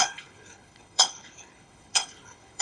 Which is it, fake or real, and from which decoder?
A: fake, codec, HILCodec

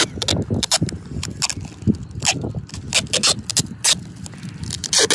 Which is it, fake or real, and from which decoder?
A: real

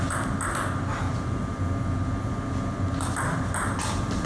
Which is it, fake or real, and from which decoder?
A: real